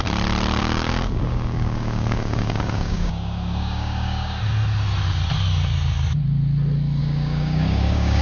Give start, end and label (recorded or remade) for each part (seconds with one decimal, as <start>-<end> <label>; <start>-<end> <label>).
0.0-0.6 recorded; 0.6-4.4 remade; 4.4-7.0 recorded; 7.0-8.2 remade